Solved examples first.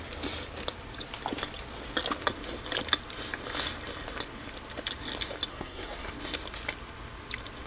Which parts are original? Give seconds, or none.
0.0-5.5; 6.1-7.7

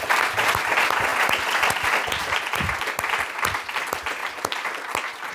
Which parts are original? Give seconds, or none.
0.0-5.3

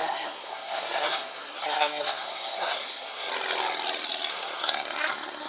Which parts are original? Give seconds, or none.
3.3-4.3

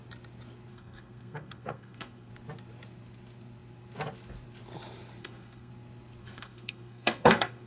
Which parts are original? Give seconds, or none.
0.0-0.7; 2.3-5.2; 5.7-6.2

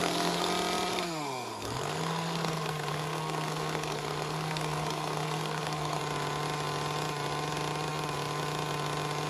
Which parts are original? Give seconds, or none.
0.5-0.9; 6.0-9.3

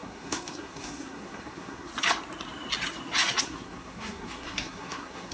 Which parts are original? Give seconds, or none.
1.9-3.4

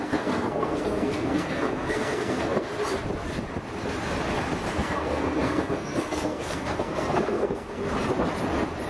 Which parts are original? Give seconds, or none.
2.7-4.7; 7.8-8.9